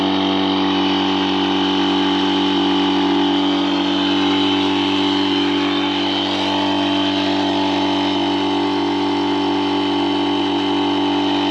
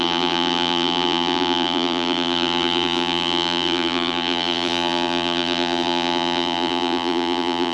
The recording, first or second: first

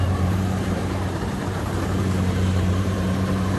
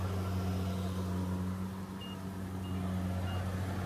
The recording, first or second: second